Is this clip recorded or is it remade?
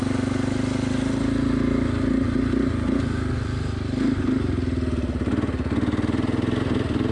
recorded